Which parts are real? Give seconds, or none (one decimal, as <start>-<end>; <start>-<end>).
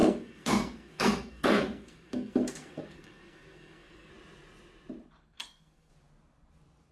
4.1-5.2; 5.9-6.9